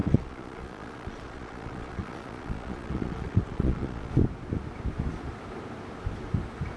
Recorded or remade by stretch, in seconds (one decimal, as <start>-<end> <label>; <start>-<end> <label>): 0.0-4.1 remade; 4.1-6.8 recorded